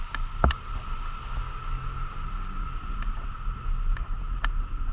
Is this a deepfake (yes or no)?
no